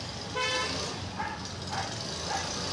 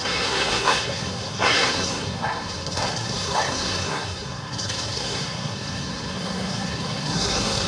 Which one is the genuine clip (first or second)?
first